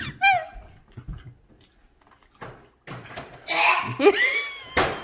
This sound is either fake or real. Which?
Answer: real